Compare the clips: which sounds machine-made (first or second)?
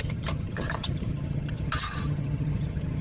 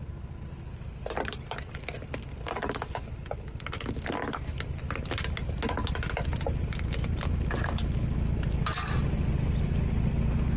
first